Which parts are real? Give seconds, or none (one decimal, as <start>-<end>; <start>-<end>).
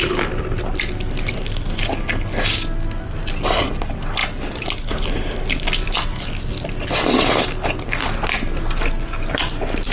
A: 0.0-9.9